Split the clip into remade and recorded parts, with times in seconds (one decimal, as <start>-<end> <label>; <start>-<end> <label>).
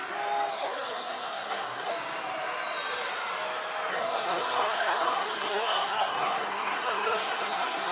0.0-0.5 recorded; 0.5-1.9 remade; 1.9-3.9 recorded; 3.9-7.9 remade